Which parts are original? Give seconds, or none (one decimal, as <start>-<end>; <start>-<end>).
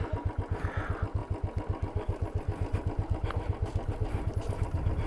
0.0-5.1